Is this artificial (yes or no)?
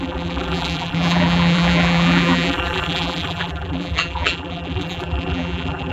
yes